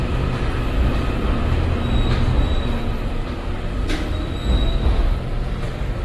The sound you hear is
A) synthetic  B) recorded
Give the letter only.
B